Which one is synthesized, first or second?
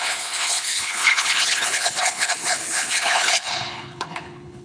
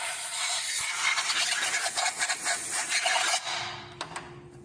first